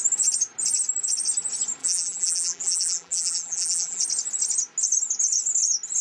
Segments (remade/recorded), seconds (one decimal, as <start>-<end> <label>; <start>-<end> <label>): 0.0-1.8 recorded; 1.8-4.0 remade; 4.0-6.0 recorded